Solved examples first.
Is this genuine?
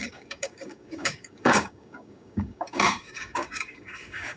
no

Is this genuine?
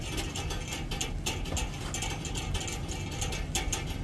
yes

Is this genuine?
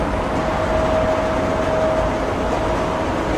yes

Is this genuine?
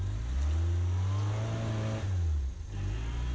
yes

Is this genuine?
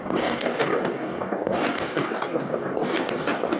no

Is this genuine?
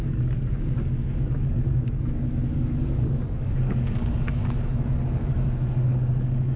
no